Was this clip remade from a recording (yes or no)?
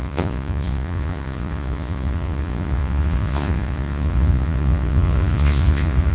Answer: yes